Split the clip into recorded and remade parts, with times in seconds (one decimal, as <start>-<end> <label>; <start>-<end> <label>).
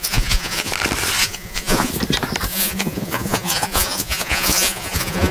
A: 0.0-0.7 remade; 0.7-1.2 recorded; 1.2-1.9 remade; 1.9-2.5 recorded; 2.5-5.3 remade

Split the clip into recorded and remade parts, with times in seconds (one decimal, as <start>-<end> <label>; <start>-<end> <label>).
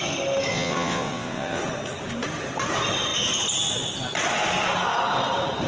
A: 0.0-0.5 recorded; 0.5-1.6 remade; 1.6-5.7 recorded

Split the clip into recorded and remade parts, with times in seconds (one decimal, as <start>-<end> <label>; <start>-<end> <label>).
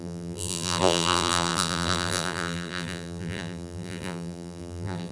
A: 0.0-5.1 remade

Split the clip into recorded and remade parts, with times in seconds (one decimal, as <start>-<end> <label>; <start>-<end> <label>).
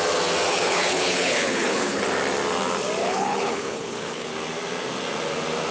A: 0.0-0.5 recorded; 0.5-2.0 remade; 2.0-3.0 recorded; 3.0-4.3 remade; 4.3-5.7 recorded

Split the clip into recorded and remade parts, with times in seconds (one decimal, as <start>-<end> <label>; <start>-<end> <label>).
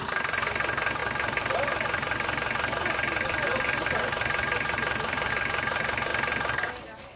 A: 0.0-7.2 remade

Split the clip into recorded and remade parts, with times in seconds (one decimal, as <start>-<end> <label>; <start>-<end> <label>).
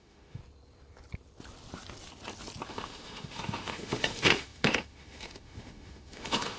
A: 0.0-0.4 remade; 0.4-2.7 recorded; 2.7-6.6 remade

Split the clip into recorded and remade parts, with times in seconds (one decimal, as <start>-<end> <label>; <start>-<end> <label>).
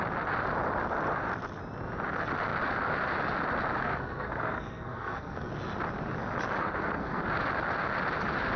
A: 0.0-3.8 recorded; 3.8-5.5 remade; 5.5-6.6 recorded; 6.6-7.2 remade; 7.2-8.6 recorded